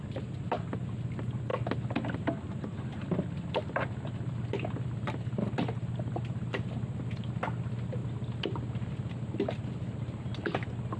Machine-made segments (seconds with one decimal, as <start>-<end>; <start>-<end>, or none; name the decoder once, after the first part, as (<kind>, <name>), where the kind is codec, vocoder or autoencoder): none